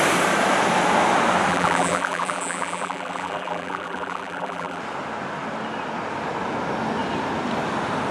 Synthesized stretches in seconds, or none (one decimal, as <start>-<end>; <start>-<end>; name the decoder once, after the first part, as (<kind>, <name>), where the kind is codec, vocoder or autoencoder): 1.5-4.8 (vocoder, BigVGAN v2)